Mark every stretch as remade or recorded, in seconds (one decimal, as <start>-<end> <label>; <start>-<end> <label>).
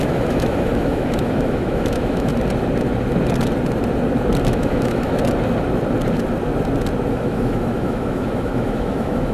0.0-2.3 remade; 2.3-4.4 recorded; 4.4-5.2 remade; 5.2-7.1 recorded; 7.1-9.3 remade